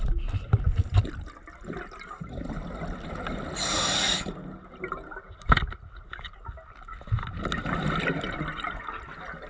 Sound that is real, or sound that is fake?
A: real